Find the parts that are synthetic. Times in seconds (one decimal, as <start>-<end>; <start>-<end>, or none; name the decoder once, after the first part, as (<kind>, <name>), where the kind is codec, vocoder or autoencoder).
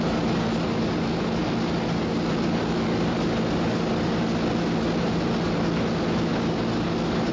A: none